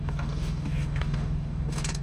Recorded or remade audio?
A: remade